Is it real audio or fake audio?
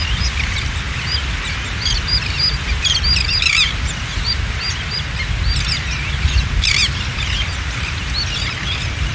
fake